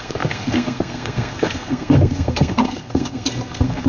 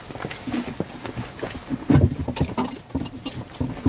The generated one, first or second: first